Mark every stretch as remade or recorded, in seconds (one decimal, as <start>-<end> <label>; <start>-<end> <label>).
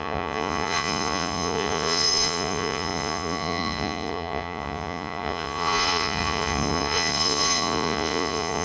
0.0-8.6 remade